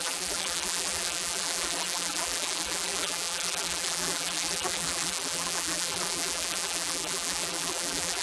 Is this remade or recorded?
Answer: remade